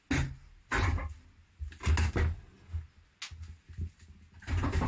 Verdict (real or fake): real